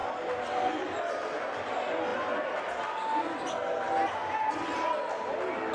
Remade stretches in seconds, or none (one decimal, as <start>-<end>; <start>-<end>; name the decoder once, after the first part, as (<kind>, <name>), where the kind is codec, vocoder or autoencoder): none